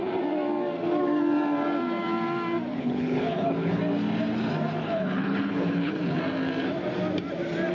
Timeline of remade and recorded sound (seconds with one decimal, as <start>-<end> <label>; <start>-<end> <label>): 0.0-2.7 recorded; 2.7-3.8 remade; 3.8-4.8 recorded; 4.8-6.2 remade; 6.2-7.7 recorded

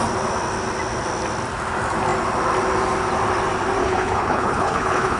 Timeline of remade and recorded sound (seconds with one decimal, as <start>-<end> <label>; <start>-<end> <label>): 0.0-3.8 recorded; 3.8-5.2 remade